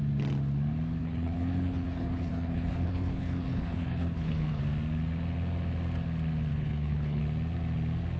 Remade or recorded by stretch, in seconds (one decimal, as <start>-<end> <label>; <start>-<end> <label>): 0.0-1.0 recorded; 1.0-4.6 remade; 4.6-6.5 recorded; 6.5-7.2 remade; 7.2-8.2 recorded